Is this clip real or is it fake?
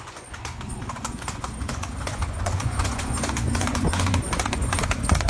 fake